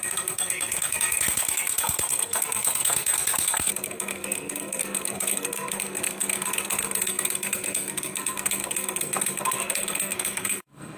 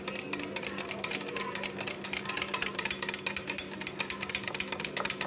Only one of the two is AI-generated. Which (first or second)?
first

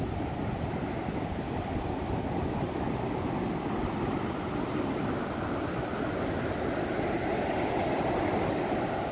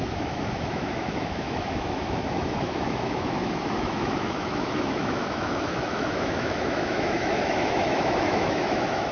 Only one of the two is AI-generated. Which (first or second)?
second